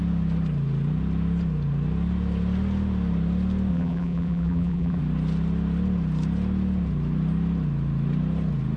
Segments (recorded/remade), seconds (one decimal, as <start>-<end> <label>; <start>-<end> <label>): 0.0-3.7 recorded; 3.7-5.0 remade; 5.0-8.8 recorded